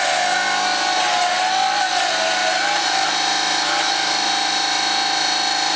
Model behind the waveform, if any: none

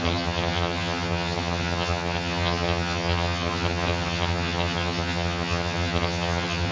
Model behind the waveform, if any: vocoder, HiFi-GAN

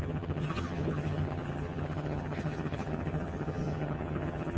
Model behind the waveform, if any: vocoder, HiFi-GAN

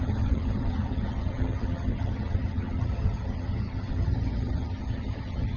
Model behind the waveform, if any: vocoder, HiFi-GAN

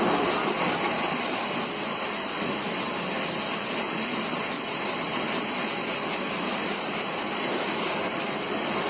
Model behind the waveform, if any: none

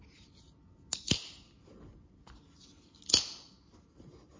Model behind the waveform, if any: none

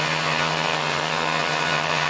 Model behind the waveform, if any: vocoder, HiFi-GAN